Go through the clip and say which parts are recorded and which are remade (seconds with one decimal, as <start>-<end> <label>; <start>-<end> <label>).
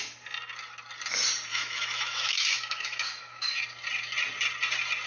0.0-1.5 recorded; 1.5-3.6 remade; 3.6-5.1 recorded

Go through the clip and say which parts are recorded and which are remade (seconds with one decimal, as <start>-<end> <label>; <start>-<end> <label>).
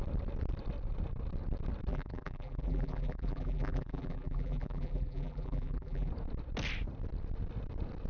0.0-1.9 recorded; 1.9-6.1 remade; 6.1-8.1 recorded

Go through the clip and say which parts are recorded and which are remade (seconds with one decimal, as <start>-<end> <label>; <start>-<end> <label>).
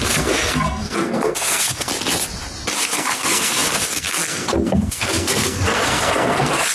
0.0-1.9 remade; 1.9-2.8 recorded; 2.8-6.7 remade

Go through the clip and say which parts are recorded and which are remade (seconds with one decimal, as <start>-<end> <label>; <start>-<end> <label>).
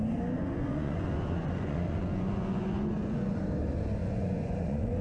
0.0-0.4 recorded; 0.4-3.4 remade; 3.4-4.0 recorded; 4.0-5.0 remade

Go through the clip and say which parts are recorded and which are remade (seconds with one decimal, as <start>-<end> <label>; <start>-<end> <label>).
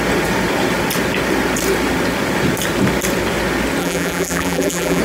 0.0-3.8 recorded; 3.8-5.0 remade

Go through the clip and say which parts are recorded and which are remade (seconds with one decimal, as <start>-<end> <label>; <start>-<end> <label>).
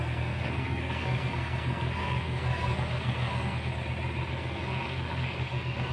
0.0-3.7 remade; 3.7-4.3 recorded; 4.3-5.9 remade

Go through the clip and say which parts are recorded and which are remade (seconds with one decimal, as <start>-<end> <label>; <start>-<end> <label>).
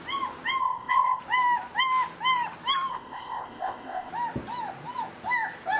0.0-0.6 recorded; 0.6-1.2 remade; 1.2-2.9 recorded; 2.9-4.1 remade; 4.1-5.8 recorded